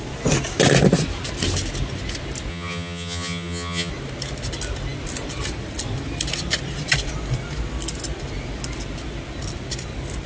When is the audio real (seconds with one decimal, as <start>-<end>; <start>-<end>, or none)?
0.0-2.5; 3.9-10.3